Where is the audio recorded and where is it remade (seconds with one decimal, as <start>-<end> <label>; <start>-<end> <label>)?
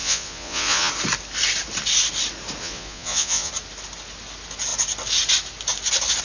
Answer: 0.0-0.9 remade; 0.9-2.6 recorded; 2.6-3.5 remade; 3.5-6.2 recorded